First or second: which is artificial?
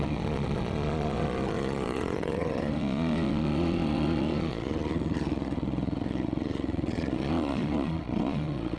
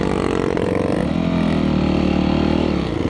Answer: first